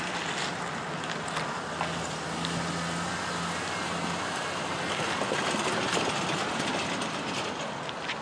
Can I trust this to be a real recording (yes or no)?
yes